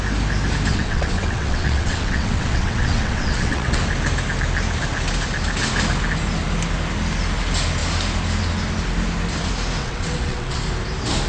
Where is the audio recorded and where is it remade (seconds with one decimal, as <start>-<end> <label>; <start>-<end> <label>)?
0.0-0.7 recorded; 0.7-3.8 remade; 3.8-9.8 recorded; 9.8-10.6 remade; 10.6-11.3 recorded